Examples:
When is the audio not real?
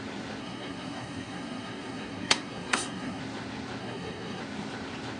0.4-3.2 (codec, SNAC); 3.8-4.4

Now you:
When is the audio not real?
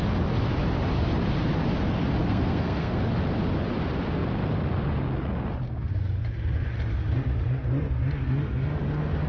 2.2-3.0 (codec, SNAC)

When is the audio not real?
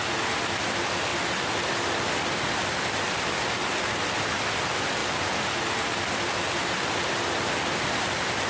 none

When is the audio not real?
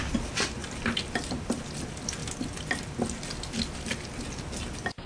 none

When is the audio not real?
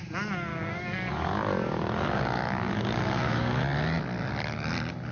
0.5-3.6 (codec, DAC)